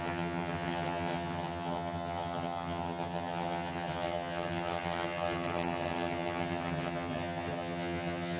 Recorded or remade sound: remade